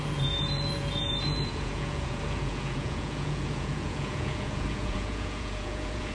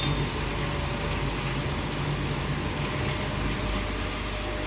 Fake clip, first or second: first